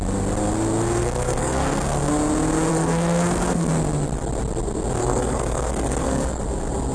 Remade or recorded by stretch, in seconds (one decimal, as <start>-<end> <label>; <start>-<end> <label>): 0.0-1.0 recorded; 1.0-2.1 remade; 2.1-2.7 recorded; 2.7-3.7 remade; 3.7-5.0 recorded; 5.0-6.4 remade; 6.4-6.9 recorded